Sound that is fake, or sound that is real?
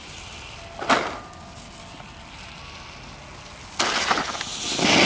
real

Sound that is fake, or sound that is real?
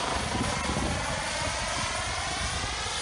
real